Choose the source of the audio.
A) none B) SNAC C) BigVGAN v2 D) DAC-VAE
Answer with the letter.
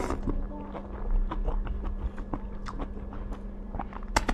A